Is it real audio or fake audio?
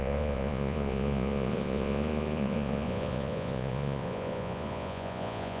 fake